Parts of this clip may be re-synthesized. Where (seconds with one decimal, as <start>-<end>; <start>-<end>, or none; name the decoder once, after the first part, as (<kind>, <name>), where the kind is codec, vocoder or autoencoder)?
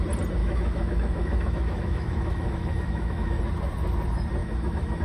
0.4-3.4 (autoencoder, DAC-VAE); 4.4-5.0